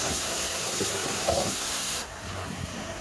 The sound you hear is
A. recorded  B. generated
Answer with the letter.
B